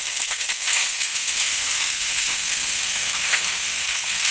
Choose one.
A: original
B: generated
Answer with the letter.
B